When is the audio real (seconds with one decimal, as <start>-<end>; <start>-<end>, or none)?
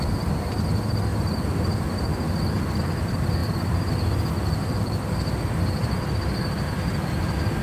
0.0-3.4; 3.9-7.6